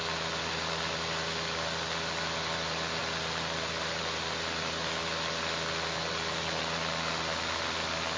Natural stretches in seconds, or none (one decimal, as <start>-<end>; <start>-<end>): 0.0-8.2